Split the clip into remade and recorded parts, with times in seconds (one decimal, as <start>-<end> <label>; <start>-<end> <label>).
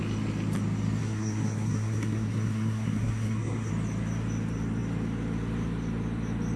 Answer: 0.0-1.0 recorded; 1.0-3.7 remade; 3.7-6.6 recorded